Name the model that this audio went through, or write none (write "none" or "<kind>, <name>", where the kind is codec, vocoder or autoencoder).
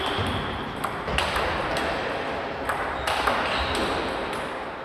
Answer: none